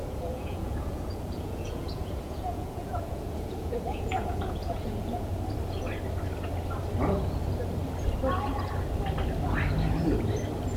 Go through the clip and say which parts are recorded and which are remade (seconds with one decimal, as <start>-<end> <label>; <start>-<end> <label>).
0.0-5.3 remade; 5.3-10.8 recorded